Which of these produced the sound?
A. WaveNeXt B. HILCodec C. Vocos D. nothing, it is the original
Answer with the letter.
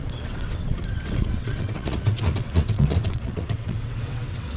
A